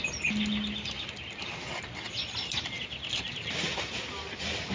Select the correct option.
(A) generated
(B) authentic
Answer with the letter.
B